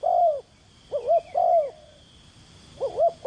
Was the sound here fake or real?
real